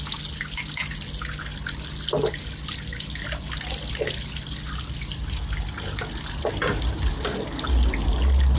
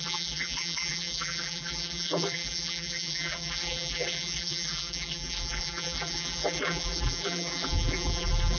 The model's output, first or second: second